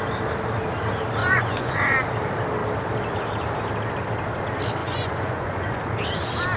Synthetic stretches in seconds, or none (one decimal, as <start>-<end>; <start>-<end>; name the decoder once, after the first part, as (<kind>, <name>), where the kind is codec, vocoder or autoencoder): 1.2-1.8 (vocoder, Vocos); 4.8-5.8